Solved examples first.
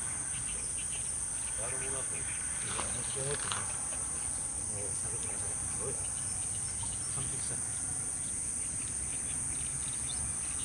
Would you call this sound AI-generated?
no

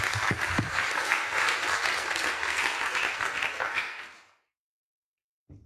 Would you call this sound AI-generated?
yes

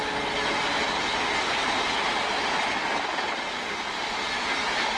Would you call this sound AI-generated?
no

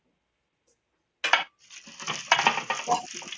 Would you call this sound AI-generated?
no